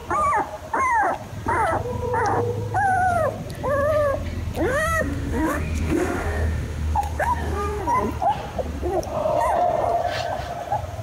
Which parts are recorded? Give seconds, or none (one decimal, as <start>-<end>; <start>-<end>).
0.0-4.7; 7.8-11.0